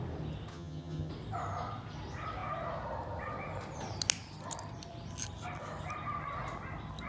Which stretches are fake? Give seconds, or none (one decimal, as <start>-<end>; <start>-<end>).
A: 0.5-1.1